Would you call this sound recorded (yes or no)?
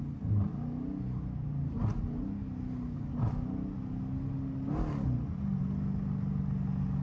yes